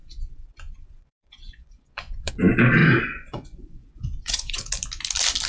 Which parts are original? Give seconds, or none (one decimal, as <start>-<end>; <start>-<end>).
2.3-2.8; 4.7-5.5